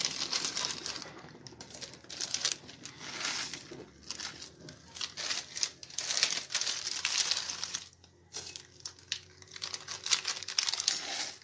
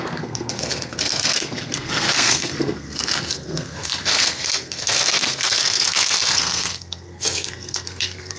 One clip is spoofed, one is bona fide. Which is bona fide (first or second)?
first